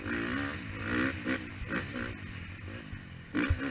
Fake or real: real